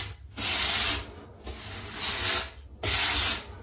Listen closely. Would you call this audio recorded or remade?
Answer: recorded